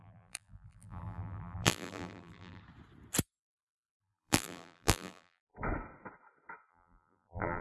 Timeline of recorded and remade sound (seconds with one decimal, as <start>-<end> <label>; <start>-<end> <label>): 0.0-2.6 remade; 2.6-3.9 recorded; 3.9-5.5 remade; 5.5-6.7 recorded; 6.7-7.6 remade